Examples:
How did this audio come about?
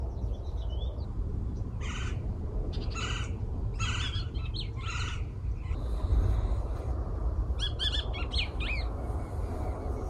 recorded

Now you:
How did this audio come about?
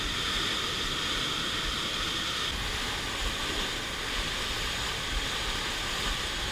recorded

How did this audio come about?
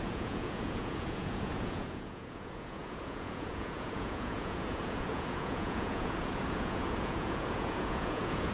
remade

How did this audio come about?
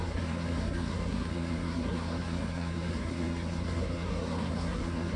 remade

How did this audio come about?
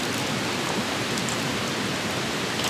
recorded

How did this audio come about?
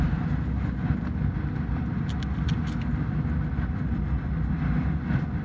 recorded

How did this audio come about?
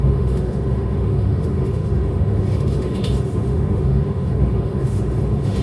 remade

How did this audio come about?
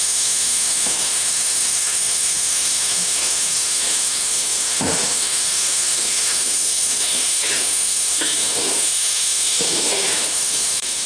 remade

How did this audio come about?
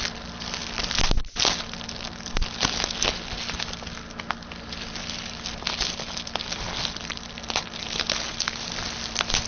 recorded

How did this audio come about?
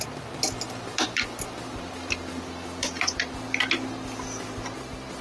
recorded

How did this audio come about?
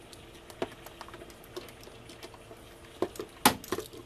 recorded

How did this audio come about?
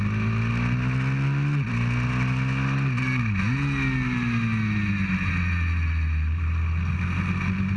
recorded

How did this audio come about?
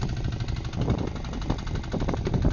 recorded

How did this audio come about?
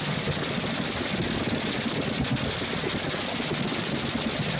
recorded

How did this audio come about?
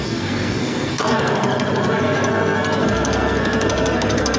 remade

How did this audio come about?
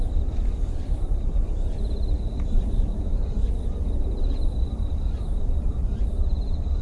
remade